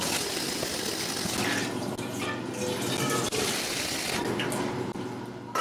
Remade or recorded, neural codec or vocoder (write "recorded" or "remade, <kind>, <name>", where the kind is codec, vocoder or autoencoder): recorded